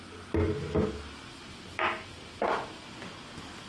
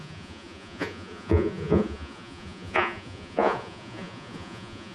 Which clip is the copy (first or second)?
second